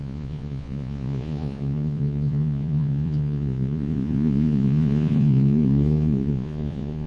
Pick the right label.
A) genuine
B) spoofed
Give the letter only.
B